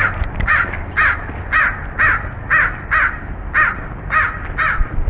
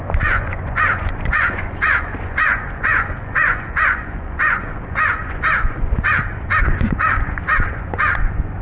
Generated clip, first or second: second